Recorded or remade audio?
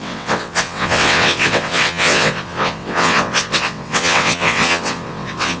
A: remade